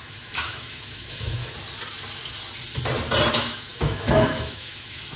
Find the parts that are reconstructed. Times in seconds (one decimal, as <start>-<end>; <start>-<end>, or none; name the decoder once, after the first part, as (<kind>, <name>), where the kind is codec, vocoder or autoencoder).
0.0-1.4 (autoencoder, DAC-VAE); 3.3-5.2